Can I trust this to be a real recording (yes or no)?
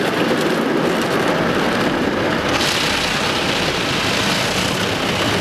yes